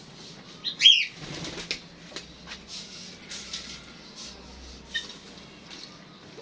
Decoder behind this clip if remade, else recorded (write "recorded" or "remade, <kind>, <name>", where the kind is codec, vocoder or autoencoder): recorded